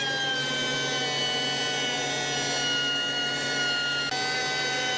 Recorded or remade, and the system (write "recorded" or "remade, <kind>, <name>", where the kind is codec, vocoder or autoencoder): recorded